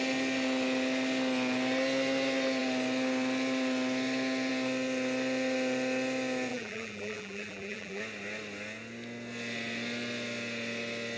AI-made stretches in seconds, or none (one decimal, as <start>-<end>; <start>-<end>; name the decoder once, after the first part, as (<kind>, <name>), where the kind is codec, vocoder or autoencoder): 6.5-8.0 (vocoder, BigVGAN v2)